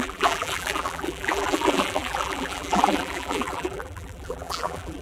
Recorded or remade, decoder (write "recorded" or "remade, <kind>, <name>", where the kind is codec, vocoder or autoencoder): remade, vocoder, BigVGAN v2